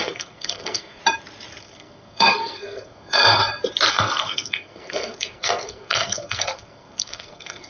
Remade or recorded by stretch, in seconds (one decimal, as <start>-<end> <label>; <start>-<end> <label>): 0.0-1.0 remade; 1.0-1.6 recorded; 1.6-3.4 remade; 3.4-3.9 recorded; 3.9-7.7 remade